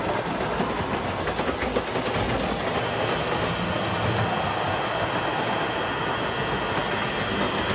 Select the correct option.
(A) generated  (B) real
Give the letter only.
B